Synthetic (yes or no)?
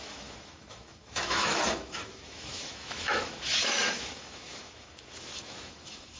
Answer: yes